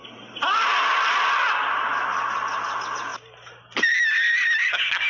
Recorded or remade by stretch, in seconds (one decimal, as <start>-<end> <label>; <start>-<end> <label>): 0.0-5.1 recorded